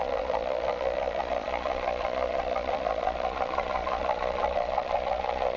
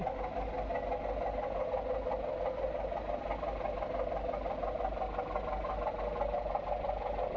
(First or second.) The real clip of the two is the second